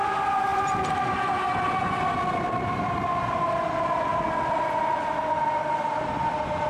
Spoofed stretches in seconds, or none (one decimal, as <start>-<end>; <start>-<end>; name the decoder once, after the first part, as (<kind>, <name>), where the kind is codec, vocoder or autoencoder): none